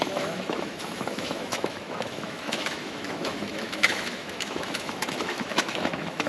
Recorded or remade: remade